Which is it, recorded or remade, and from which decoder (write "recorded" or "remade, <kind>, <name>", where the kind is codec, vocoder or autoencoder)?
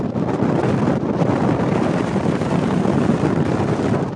recorded